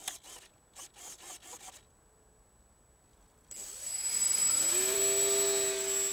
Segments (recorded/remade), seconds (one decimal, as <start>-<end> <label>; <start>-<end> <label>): 0.0-3.1 recorded; 3.1-5.0 remade; 5.0-6.1 recorded